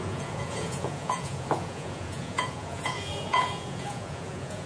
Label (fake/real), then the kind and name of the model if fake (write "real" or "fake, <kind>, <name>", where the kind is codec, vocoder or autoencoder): fake, vocoder, Vocos